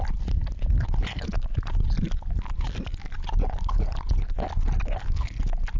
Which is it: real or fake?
real